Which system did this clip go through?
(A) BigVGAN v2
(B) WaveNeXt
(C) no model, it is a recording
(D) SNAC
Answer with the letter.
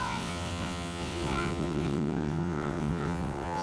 B